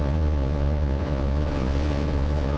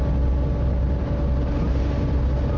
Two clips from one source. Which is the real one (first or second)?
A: second